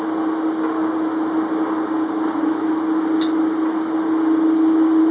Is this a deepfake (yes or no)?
no